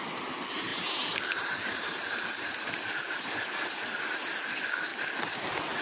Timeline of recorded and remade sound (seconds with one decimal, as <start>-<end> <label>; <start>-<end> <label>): 0.0-5.8 recorded